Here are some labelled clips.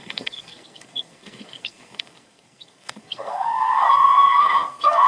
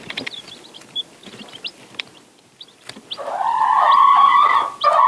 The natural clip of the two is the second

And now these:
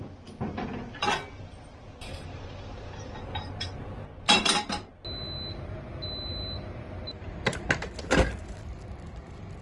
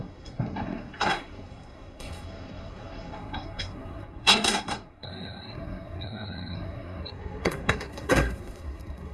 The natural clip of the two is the first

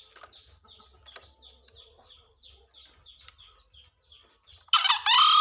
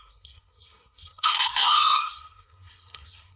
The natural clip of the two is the first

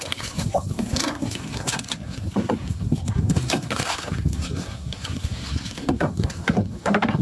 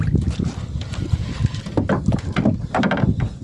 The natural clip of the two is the second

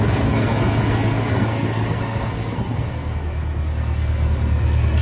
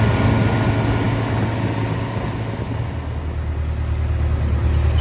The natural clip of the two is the second